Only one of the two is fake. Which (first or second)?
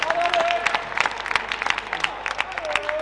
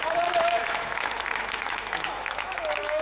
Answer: second